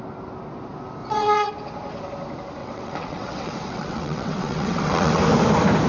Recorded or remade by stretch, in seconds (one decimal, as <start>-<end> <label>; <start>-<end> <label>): 0.0-1.0 recorded; 1.0-1.5 remade; 1.5-2.6 recorded; 2.6-5.2 remade; 5.2-5.9 recorded